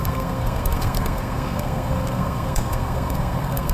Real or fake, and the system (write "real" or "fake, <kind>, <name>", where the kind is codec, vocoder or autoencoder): fake, codec, SNAC